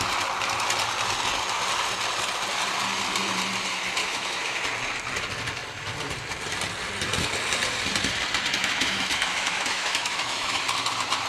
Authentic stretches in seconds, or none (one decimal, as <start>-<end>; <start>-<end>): 0.0-4.0; 4.6-8.6; 10.6-11.3